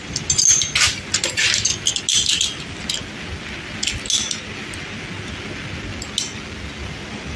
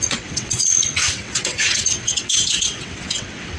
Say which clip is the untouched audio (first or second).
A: first